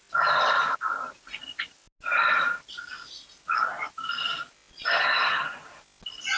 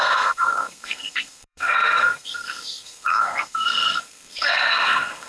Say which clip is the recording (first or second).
first